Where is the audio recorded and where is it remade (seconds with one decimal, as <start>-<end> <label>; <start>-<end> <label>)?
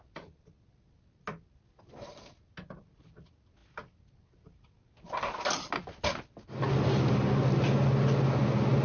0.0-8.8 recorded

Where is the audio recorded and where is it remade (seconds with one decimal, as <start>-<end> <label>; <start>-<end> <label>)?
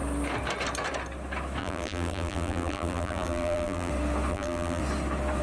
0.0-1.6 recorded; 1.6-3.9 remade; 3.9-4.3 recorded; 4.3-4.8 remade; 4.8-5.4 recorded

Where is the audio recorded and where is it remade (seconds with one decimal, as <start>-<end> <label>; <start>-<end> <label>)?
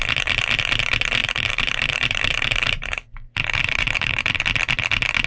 0.0-1.2 recorded; 1.2-4.4 remade; 4.4-5.3 recorded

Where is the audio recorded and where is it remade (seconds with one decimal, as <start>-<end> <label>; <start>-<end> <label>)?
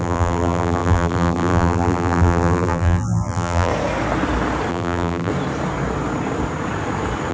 0.0-3.7 remade; 3.7-4.7 recorded; 4.7-5.3 remade; 5.3-7.3 recorded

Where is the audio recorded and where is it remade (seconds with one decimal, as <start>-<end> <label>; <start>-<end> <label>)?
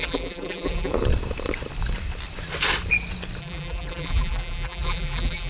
0.0-0.9 remade; 0.9-3.4 recorded; 3.4-5.5 remade